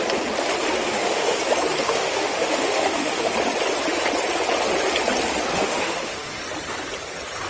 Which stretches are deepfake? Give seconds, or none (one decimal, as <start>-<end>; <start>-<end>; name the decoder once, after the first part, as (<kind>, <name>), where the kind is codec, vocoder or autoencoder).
0.8-1.4 (autoencoder, DAC-VAE); 1.8-3.3; 5.5-6.4